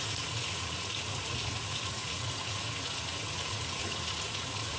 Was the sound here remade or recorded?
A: remade